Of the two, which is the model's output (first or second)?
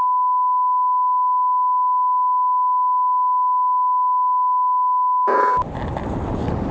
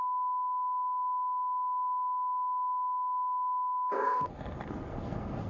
second